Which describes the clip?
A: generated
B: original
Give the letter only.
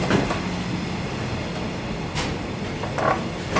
B